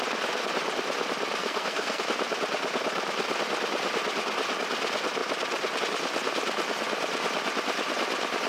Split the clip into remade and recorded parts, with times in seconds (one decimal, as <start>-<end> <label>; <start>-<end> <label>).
0.0-1.4 recorded; 1.4-2.0 remade; 2.0-8.5 recorded